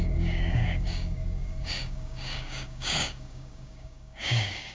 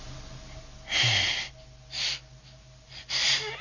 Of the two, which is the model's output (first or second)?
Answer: first